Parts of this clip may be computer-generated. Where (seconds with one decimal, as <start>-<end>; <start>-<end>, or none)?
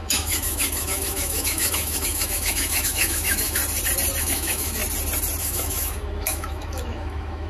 0.0-3.6; 4.2-4.8; 5.4-7.5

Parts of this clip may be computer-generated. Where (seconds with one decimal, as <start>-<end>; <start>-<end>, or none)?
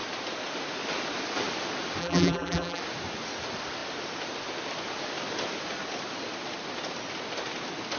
2.0-2.8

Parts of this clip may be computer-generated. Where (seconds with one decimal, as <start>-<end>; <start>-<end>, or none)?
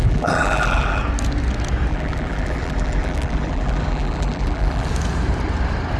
0.0-1.0; 1.9-4.9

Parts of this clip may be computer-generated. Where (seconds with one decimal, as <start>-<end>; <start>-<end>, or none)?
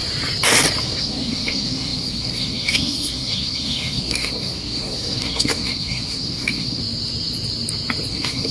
0.8-6.8; 8.1-8.5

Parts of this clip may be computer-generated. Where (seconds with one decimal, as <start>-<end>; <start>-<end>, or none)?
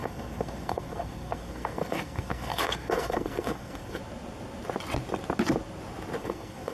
0.0-4.0; 6.2-6.7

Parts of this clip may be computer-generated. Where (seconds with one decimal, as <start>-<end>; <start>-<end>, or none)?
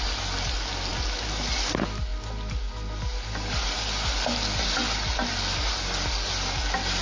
none